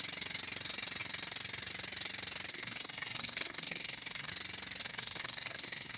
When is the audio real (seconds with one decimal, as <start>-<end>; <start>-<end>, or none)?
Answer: 0.0-2.5; 4.3-4.8